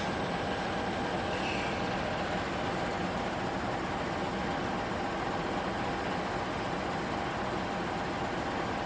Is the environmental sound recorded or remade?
recorded